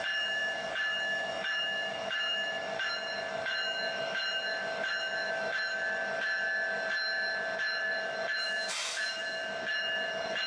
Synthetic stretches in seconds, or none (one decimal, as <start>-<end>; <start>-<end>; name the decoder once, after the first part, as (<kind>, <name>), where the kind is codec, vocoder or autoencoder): 0.0-10.5 (autoencoder, DAC-VAE)

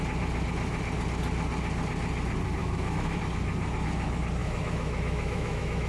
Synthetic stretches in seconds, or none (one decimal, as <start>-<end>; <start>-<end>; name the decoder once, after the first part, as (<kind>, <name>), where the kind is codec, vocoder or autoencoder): 2.6-3.2 (autoencoder, DAC-VAE); 4.4-5.9

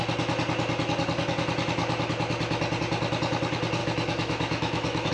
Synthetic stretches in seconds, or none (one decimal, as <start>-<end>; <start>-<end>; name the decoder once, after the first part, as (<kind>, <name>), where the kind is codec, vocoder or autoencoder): 3.8-5.1 (autoencoder, DAC-VAE)

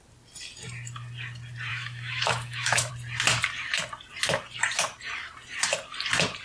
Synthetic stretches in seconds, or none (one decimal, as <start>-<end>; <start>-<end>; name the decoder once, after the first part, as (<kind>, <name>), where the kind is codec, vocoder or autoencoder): 1.7-2.9 (autoencoder, DAC-VAE)